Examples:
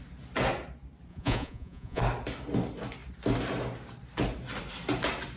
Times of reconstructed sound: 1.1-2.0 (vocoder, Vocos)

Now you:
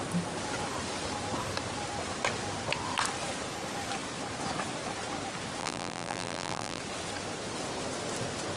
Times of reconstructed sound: 5.6-6.8 (vocoder, BigVGAN v2)

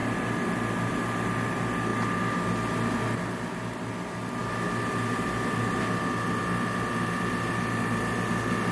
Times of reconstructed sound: none